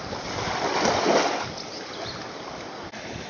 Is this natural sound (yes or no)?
yes